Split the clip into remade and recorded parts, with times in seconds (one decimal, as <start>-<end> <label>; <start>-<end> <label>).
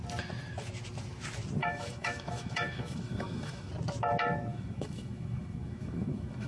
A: 0.0-1.6 recorded; 1.6-3.7 remade; 3.7-4.5 recorded; 4.5-6.5 remade